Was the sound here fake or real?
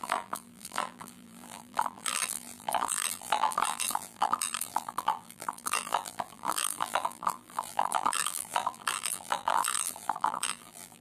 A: fake